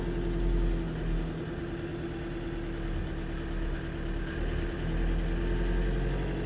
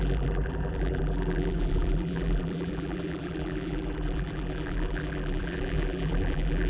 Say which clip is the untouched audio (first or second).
first